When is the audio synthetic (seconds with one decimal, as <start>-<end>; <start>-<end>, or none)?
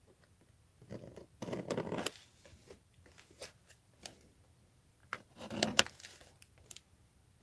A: 2.5-3.1; 5.0-5.5